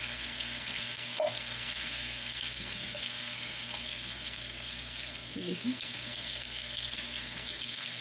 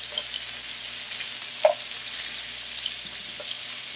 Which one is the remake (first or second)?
first